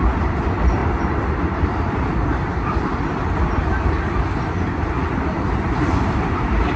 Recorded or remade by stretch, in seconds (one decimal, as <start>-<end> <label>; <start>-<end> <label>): 0.0-0.8 remade; 0.8-4.9 recorded; 4.9-6.8 remade